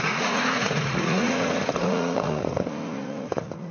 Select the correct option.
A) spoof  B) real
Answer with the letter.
A